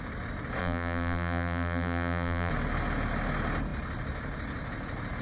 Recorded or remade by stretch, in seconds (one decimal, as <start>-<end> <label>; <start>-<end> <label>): 0.0-0.6 recorded; 0.6-2.5 remade; 2.5-5.2 recorded